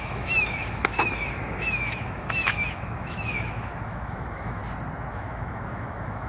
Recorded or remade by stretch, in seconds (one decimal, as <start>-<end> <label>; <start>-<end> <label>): 0.0-4.6 remade; 4.6-5.1 recorded; 5.1-6.3 remade